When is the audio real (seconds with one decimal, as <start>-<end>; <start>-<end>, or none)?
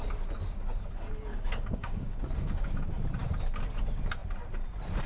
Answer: 0.0-1.3; 2.7-5.1